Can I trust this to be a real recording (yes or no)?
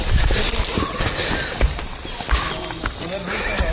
yes